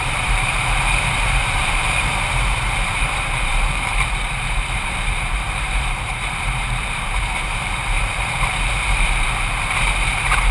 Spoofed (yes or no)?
yes